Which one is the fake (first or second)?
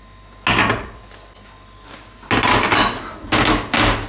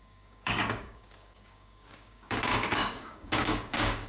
second